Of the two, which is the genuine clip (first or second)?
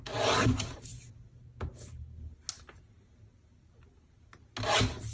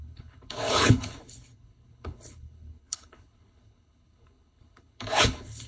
first